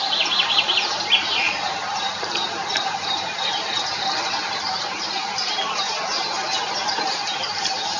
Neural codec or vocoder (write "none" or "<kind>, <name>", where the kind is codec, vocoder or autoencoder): vocoder, BigVGAN v2